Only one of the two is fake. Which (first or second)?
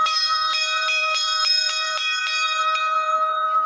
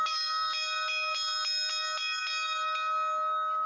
first